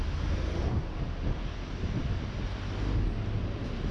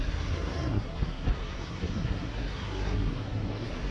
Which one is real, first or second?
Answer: first